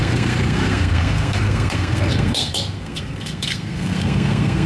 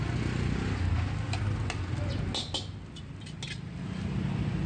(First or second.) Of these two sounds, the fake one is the first